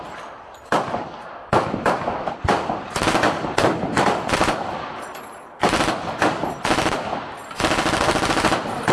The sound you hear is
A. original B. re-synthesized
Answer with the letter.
A